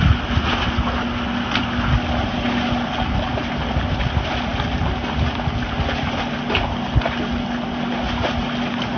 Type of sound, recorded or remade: recorded